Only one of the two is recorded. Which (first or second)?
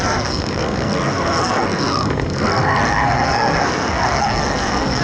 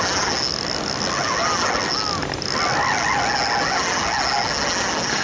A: second